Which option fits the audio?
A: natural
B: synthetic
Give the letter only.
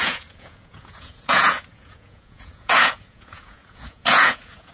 B